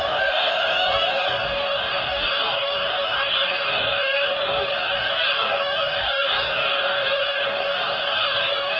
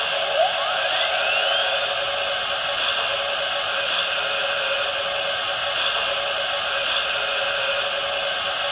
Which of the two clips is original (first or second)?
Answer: second